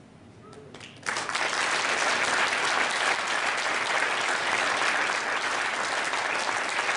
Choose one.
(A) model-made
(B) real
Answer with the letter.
B